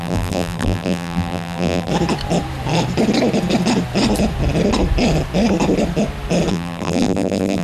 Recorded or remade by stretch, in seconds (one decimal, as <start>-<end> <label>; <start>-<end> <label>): 0.0-1.9 remade; 1.9-6.5 recorded; 6.5-7.6 remade